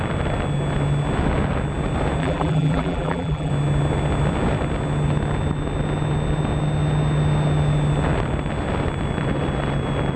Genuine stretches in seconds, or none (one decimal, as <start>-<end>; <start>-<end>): 0.0-2.2; 3.5-10.2